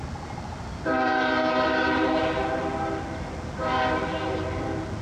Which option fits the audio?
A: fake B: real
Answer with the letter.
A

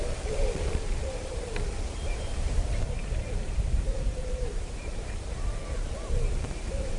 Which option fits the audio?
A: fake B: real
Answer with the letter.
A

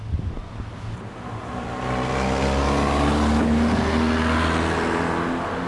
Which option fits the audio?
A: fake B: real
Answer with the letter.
B